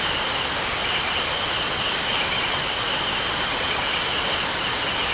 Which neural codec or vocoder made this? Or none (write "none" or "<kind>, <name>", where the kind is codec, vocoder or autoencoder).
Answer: none